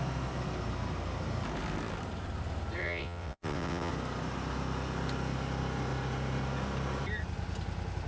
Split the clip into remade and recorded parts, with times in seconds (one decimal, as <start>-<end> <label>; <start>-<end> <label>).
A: 0.0-2.8 recorded; 2.8-3.9 remade; 3.9-8.1 recorded